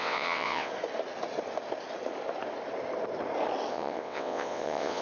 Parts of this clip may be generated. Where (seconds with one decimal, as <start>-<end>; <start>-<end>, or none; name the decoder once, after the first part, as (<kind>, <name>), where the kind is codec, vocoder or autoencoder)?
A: 0.0-0.7 (vocoder, WaveNeXt); 3.7-5.0